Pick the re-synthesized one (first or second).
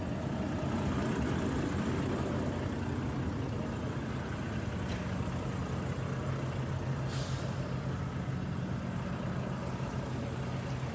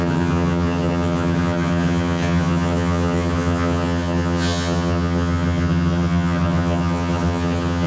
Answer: second